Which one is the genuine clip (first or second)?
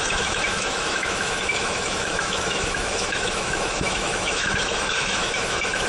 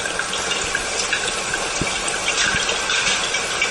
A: second